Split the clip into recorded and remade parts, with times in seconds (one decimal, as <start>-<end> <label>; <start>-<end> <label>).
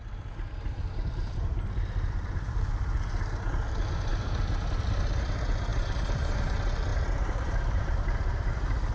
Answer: 0.0-0.9 recorded; 0.9-2.7 remade; 2.7-5.7 recorded; 5.7-6.4 remade; 6.4-6.9 recorded; 6.9-8.5 remade; 8.5-8.9 recorded